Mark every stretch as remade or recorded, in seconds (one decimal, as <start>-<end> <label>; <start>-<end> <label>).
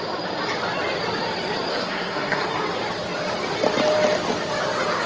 0.0-1.7 recorded; 1.7-2.4 remade; 2.4-5.1 recorded